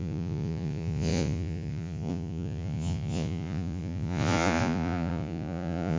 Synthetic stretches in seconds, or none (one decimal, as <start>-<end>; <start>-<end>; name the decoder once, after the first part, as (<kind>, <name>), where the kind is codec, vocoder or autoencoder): 0.0-6.0 (vocoder, Vocos)